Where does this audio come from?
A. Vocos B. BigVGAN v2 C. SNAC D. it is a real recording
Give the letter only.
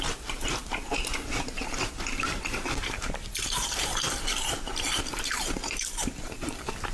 B